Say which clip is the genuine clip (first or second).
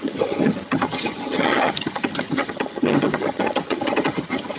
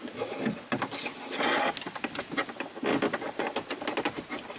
second